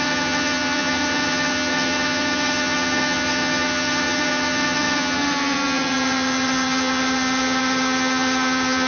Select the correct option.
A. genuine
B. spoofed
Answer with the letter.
B